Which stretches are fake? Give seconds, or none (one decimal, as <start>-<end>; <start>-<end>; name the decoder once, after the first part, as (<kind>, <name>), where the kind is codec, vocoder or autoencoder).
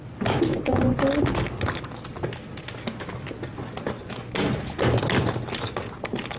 0.5-1.0 (vocoder, Vocos)